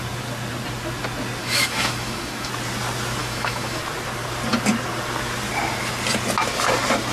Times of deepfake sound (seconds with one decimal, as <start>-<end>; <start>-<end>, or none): 1.4-2.5; 3.2-3.8